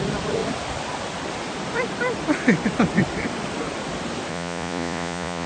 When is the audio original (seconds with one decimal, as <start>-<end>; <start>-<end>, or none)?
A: 0.0-4.3